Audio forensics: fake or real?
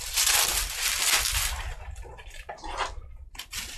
real